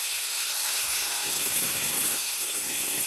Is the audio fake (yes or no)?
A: yes